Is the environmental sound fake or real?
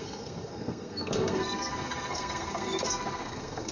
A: fake